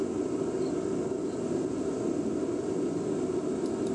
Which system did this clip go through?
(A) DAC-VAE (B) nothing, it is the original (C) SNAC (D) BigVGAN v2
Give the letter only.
B